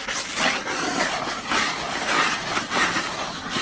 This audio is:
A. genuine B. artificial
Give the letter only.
A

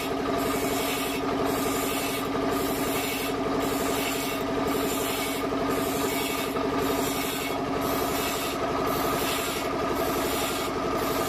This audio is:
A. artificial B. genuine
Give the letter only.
B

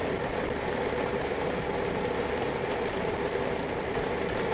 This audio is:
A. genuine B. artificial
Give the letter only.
A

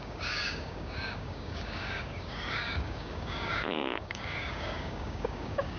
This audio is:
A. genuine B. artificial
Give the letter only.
B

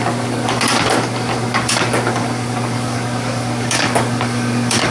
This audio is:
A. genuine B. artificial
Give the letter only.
B